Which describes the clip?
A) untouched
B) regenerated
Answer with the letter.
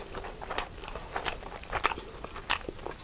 A